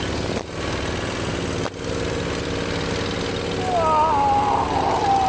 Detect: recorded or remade recorded